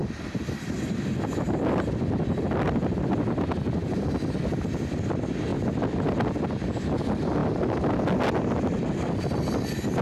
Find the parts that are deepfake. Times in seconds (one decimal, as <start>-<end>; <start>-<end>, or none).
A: 0.0-4.1